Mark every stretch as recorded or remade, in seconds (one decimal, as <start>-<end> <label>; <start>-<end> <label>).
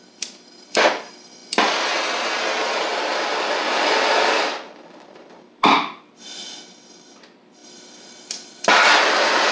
0.0-2.9 recorded; 2.9-6.1 remade; 6.1-9.5 recorded